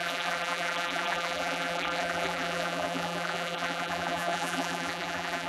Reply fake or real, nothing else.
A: fake